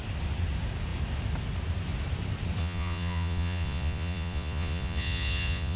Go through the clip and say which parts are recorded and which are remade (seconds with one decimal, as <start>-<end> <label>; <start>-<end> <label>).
0.0-2.6 recorded; 2.6-5.8 remade